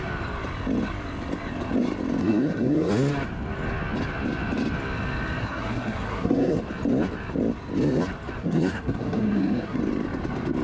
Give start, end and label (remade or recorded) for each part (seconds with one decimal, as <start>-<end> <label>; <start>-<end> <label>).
0.0-2.2 recorded; 2.2-2.9 remade; 2.9-5.4 recorded; 5.4-6.6 remade; 6.6-8.4 recorded; 8.4-9.8 remade; 9.8-10.6 recorded

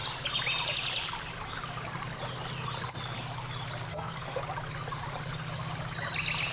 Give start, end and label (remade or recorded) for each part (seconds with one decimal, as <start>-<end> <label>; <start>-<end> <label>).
0.0-3.9 recorded; 3.9-4.4 remade; 4.4-6.5 recorded

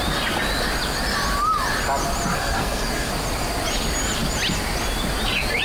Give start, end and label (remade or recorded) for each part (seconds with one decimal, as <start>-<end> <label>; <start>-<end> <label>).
0.0-2.3 recorded; 2.3-3.1 remade; 3.1-5.6 recorded

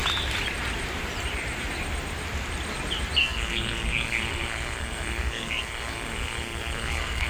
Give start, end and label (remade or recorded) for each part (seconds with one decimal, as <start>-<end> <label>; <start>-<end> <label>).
0.0-3.2 recorded; 3.2-7.3 remade